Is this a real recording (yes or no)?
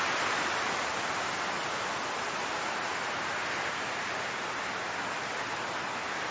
yes